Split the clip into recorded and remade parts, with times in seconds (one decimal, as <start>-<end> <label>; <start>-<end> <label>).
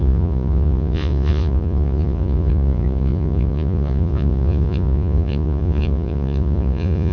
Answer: 0.0-7.1 remade